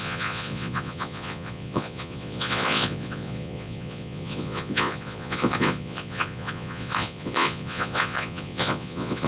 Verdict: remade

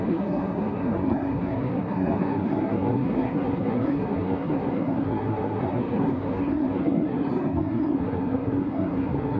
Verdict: remade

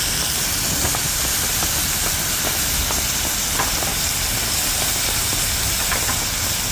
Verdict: recorded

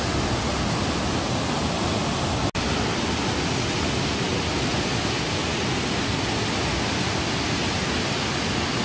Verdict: recorded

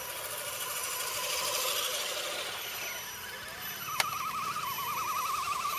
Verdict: recorded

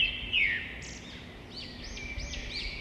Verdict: recorded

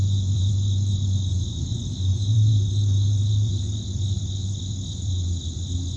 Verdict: remade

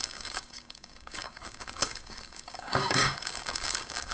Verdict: remade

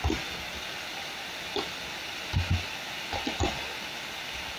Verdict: recorded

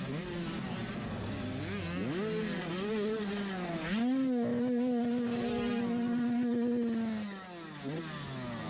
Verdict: recorded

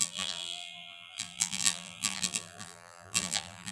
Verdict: remade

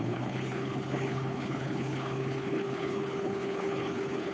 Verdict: remade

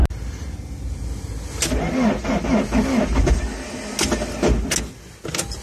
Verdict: recorded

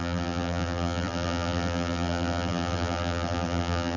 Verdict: remade